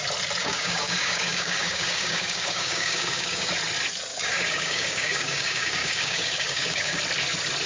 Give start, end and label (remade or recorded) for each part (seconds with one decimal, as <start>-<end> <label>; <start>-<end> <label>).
0.0-0.4 recorded; 0.4-3.5 remade; 3.5-4.1 recorded; 4.1-7.0 remade; 7.0-7.7 recorded